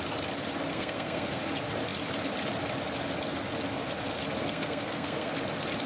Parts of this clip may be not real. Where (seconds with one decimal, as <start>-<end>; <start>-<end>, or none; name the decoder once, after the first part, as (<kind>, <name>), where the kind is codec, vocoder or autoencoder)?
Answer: 0.7-1.5 (codec, SNAC); 4.4-5.3

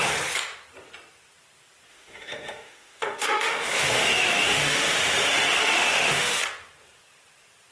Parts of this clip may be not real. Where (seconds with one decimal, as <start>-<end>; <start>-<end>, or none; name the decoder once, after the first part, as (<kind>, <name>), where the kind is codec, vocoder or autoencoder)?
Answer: 1.9-5.0 (autoencoder, DAC-VAE); 5.6-6.4

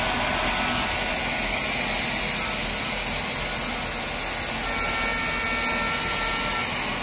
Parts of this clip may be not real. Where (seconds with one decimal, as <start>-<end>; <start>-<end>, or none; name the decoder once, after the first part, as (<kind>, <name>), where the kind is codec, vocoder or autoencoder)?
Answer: none

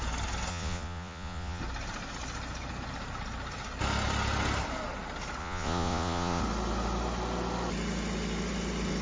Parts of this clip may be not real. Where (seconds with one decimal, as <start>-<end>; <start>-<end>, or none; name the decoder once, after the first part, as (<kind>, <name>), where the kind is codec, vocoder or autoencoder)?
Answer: 0.5-1.6 (vocoder, Vocos); 5.4-6.4

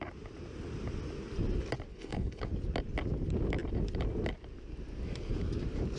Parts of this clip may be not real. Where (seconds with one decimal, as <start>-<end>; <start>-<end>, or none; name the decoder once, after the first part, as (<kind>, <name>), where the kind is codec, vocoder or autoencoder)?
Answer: 1.9-2.5 (codec, HILCodec)

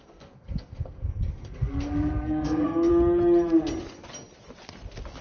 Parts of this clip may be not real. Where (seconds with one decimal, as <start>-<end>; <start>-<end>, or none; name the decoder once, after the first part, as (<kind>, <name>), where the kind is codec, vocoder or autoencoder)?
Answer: 0.0-2.9 (codec, SNAC)